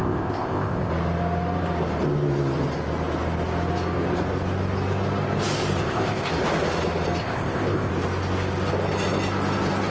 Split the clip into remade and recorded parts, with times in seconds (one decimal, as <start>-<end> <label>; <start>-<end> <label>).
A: 0.0-0.9 remade; 0.9-5.8 recorded; 5.8-6.3 remade; 6.3-7.2 recorded; 7.2-7.9 remade; 7.9-9.9 recorded